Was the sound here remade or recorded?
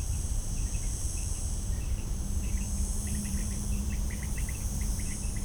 remade